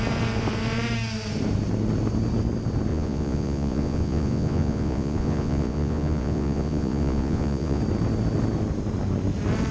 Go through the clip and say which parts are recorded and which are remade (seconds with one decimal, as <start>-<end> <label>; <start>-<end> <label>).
0.0-2.9 recorded; 2.9-7.8 remade; 7.8-9.7 recorded